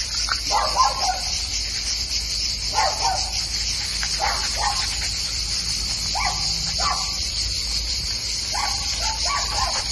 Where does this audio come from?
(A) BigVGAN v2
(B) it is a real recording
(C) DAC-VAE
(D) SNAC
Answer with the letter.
A